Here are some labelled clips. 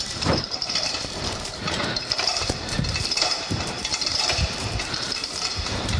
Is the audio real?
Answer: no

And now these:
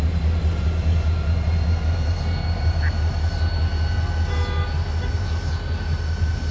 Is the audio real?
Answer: yes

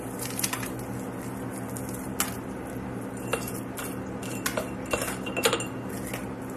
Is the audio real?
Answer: yes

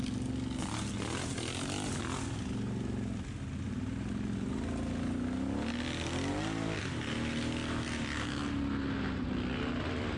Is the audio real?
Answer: yes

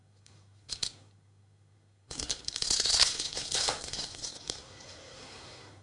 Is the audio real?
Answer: no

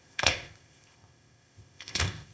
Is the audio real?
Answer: no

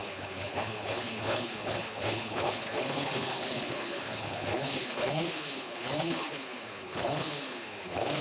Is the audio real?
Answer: no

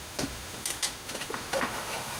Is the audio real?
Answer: no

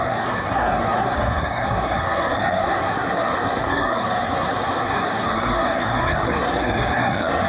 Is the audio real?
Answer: no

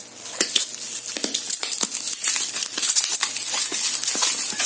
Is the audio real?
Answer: yes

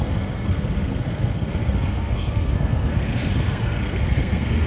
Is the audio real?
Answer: no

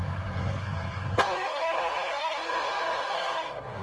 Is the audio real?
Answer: no